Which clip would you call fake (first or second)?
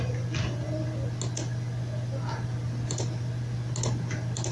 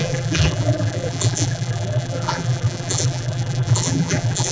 second